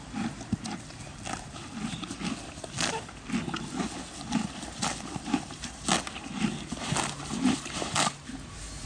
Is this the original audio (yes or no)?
yes